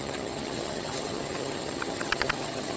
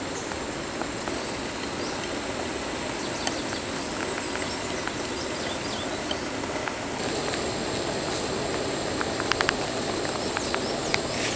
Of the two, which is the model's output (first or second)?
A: first